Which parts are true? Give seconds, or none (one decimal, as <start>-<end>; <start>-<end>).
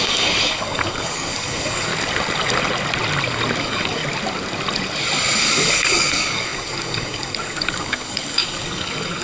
1.9-3.6; 4.0-5.4